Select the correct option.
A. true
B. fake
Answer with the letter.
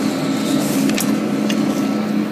A